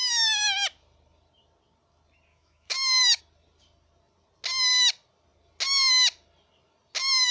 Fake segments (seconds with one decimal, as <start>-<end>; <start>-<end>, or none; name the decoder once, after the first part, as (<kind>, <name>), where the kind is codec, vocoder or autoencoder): 2.3-3.2 (autoencoder, DAC-VAE)